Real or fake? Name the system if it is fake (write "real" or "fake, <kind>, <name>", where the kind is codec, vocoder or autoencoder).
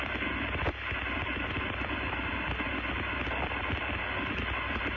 real